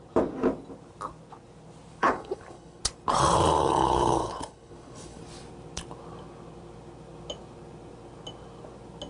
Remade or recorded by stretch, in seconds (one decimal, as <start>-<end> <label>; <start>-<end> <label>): 0.0-2.0 recorded; 2.0-2.8 remade; 2.8-3.6 recorded; 3.6-5.2 remade; 5.2-9.1 recorded

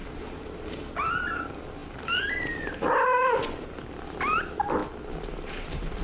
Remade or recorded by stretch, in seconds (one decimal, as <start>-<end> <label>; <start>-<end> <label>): 0.0-0.8 remade; 0.8-1.8 recorded; 1.8-3.8 remade; 3.8-4.8 recorded; 4.8-6.0 remade

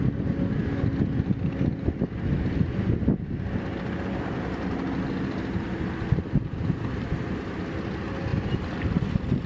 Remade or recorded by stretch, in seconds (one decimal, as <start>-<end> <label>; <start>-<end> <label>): 0.0-9.5 recorded

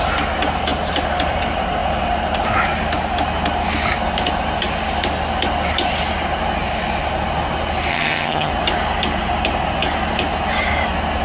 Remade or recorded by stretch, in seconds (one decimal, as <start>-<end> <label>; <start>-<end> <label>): 0.0-7.9 recorded; 7.9-8.5 remade; 8.5-11.2 recorded

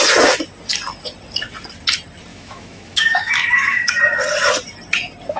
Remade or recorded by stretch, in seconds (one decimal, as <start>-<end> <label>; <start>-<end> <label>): 0.0-2.3 recorded; 2.3-4.0 remade; 4.0-5.4 recorded

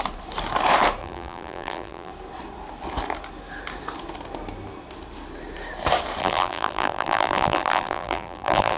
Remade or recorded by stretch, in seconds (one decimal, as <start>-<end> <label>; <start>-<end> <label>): 0.0-1.0 recorded; 1.0-2.1 remade; 2.1-6.2 recorded; 6.2-8.8 remade